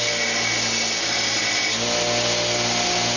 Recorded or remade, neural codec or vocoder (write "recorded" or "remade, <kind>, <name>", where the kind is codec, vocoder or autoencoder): recorded